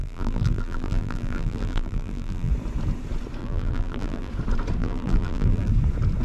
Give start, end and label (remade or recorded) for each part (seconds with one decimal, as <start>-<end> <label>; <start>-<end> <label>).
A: 0.0-2.5 remade; 2.5-3.4 recorded; 3.4-4.3 remade; 4.3-4.8 recorded; 4.8-5.7 remade; 5.7-6.2 recorded